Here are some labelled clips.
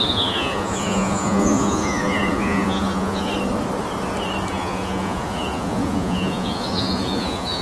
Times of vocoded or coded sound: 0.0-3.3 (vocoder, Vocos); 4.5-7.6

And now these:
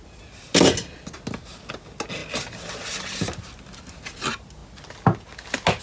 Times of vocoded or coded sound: none

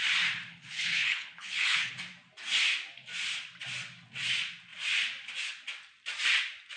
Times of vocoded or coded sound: 0.5-1.9 (codec, HILCodec)

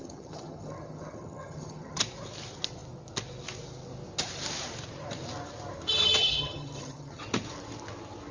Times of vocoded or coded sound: 0.0-2.0 (vocoder, HiFi-GAN); 6.2-7.2

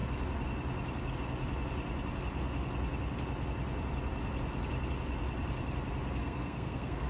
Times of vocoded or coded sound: 6.2-7.1 (codec, SNAC)

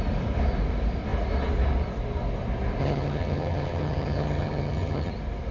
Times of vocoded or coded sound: 2.8-5.1 (vocoder, HiFi-GAN)

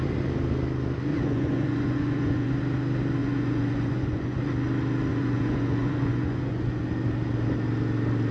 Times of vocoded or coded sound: 1.1-2.5 (vocoder, Vocos); 3.2-4.4; 5.1-6.8

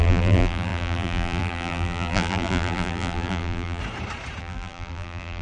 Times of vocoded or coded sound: 0.0-3.8 (vocoder, BigVGAN v2); 4.4-5.4